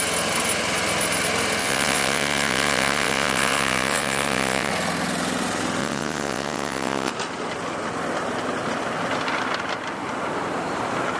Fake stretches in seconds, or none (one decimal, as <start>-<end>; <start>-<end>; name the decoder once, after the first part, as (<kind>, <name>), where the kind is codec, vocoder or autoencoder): 1.6-4.7 (vocoder, WaveNeXt); 5.8-7.1